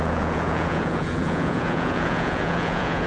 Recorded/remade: remade